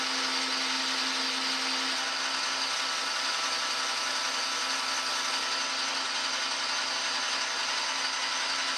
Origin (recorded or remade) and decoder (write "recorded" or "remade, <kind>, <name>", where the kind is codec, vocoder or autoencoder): recorded